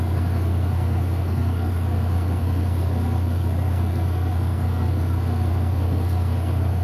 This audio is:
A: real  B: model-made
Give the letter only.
B